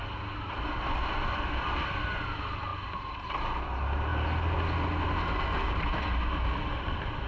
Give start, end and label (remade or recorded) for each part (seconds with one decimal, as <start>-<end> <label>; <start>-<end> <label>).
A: 0.0-7.3 recorded

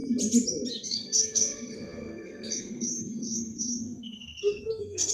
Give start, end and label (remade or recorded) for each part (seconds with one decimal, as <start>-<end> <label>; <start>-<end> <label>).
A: 0.0-0.7 recorded; 0.7-5.1 remade